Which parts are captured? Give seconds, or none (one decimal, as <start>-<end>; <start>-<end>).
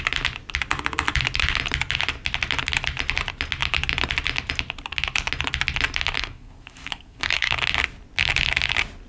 0.0-6.2; 7.5-9.1